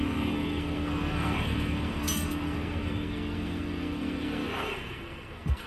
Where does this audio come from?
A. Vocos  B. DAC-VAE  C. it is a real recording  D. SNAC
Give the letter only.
D